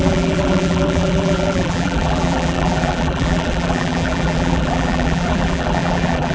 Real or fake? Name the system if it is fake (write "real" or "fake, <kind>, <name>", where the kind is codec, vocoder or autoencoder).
fake, vocoder, BigVGAN v2